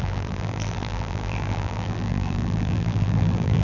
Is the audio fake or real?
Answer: fake